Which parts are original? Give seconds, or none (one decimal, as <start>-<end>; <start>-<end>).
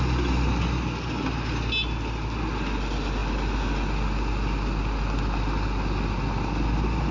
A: 0.0-7.1